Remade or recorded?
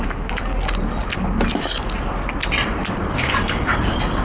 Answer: recorded